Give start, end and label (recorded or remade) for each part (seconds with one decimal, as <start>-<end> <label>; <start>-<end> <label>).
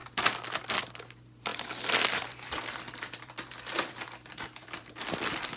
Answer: 0.0-1.5 recorded; 1.5-4.9 remade; 4.9-5.6 recorded